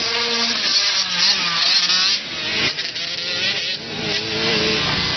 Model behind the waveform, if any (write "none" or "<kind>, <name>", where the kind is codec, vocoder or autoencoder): none